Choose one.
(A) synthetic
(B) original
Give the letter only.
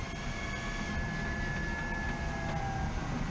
B